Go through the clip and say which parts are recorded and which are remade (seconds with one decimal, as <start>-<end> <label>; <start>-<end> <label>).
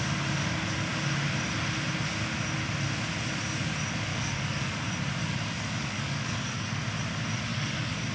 0.0-4.1 recorded; 4.1-4.8 remade; 4.8-5.2 recorded; 5.2-6.8 remade; 6.8-7.5 recorded; 7.5-8.1 remade